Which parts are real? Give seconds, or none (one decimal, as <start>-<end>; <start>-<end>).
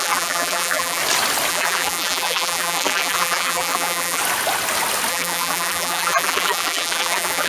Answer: 1.0-1.5; 4.2-5.1